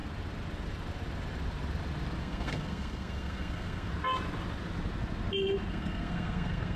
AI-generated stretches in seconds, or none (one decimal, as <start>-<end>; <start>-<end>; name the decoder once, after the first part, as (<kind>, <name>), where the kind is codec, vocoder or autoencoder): 2.2-3.9 (codec, SNAC); 5.7-6.8